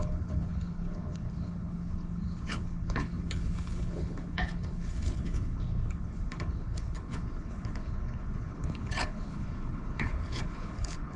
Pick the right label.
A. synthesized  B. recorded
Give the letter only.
A